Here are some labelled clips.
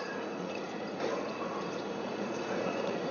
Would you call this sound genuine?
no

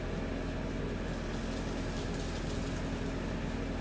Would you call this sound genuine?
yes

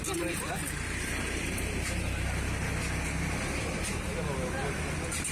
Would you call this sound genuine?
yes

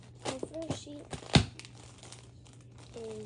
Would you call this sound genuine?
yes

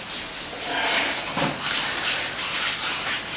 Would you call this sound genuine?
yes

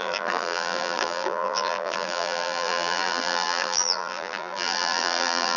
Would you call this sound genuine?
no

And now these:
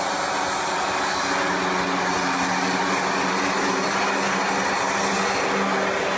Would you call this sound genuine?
yes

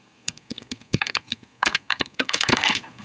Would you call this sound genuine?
no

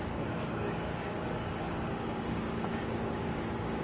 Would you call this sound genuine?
no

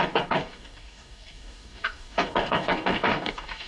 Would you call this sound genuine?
no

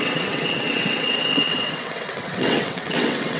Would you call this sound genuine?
no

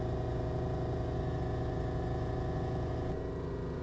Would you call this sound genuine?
no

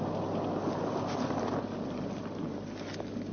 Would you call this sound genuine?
yes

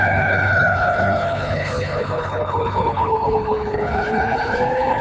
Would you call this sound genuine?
no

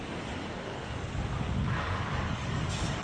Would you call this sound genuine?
no